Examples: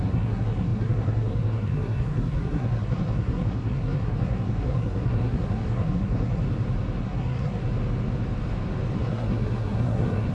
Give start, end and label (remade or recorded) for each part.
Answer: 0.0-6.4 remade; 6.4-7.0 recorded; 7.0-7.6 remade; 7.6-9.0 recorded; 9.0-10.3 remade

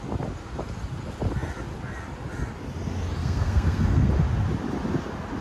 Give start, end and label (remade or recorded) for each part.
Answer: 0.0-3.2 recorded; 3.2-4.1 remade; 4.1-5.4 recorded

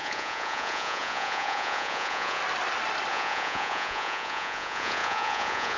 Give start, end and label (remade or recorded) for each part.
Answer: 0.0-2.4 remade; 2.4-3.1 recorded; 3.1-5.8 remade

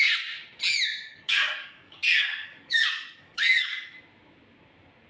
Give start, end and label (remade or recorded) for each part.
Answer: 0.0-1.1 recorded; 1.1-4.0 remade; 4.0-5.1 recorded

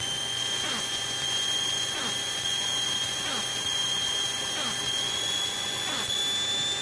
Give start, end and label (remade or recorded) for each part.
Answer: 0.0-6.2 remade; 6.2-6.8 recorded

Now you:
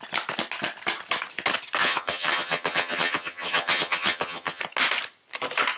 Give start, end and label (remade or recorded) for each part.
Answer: 0.0-1.8 recorded; 1.8-4.6 remade; 4.6-5.8 recorded